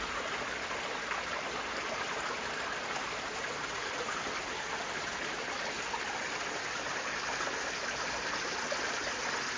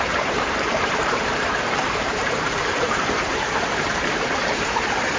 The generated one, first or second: second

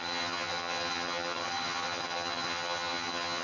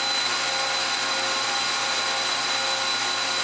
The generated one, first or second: first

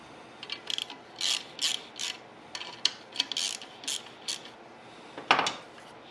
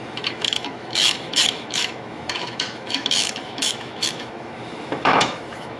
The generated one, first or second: second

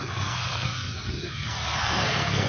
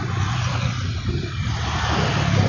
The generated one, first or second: first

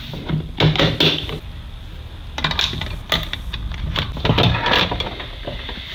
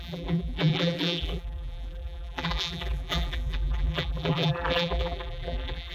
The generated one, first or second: second